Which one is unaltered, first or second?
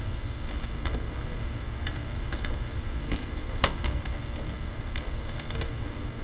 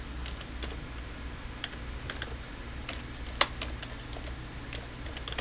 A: second